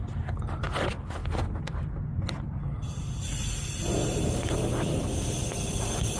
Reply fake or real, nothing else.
real